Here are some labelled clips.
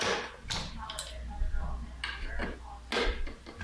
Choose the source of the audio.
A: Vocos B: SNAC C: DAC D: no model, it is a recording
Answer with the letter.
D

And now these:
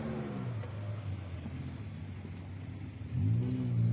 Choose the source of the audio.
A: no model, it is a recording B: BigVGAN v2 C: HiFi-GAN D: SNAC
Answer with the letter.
A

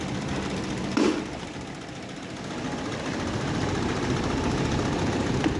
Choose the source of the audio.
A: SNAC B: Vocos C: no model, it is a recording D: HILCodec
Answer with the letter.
C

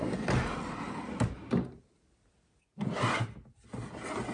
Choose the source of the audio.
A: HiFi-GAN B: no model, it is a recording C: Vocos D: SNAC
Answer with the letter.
B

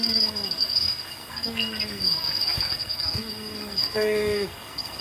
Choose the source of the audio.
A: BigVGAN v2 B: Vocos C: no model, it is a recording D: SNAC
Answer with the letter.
D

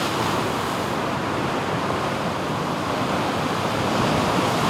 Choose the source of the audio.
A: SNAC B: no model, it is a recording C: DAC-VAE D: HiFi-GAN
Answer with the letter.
B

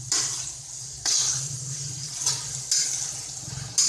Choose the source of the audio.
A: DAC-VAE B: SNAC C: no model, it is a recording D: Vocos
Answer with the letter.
C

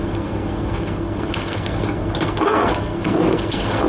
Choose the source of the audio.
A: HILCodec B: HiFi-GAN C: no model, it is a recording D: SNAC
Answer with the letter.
D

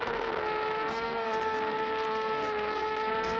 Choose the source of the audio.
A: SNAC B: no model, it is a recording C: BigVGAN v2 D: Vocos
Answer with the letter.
A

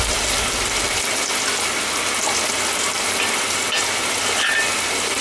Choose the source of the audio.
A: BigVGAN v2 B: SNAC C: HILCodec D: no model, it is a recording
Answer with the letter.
D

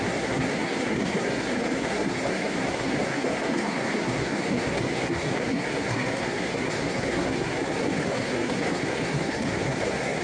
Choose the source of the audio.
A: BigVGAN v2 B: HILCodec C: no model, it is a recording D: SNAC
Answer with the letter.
D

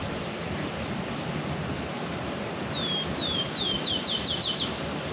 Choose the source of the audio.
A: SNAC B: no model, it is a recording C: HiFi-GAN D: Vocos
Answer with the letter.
B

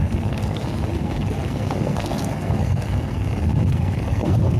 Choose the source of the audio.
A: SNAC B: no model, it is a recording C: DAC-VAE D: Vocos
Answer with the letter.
A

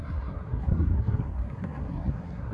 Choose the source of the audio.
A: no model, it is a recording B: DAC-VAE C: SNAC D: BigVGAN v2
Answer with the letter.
C